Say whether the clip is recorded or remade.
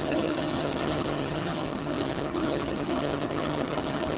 remade